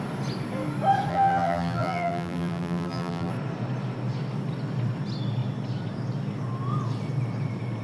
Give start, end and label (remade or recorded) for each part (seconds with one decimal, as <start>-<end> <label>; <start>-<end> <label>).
0.0-1.1 recorded; 1.1-3.3 remade; 3.3-7.8 recorded